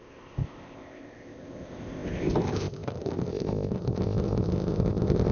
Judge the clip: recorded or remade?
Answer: remade